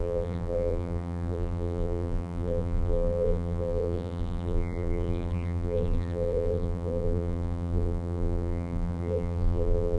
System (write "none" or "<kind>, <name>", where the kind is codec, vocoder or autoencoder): vocoder, BigVGAN v2